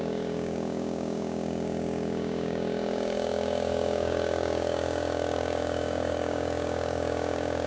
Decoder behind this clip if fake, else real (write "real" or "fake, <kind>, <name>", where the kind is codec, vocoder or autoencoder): fake, codec, DAC